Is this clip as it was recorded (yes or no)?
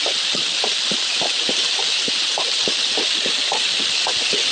yes